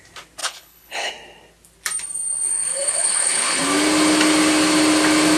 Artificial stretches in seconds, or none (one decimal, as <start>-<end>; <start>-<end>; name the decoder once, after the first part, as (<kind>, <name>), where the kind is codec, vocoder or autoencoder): 0.4-1.1 (codec, HILCodec); 2.7-3.6